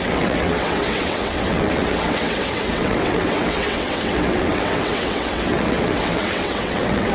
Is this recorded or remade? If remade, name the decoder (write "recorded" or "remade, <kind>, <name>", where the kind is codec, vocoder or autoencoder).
remade, vocoder, WaveNeXt